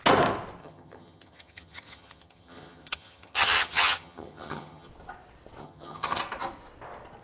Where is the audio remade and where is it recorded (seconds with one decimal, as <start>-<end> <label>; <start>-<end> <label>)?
0.0-0.6 recorded; 0.6-4.9 remade; 4.9-5.6 recorded; 5.6-6.2 remade; 6.2-7.2 recorded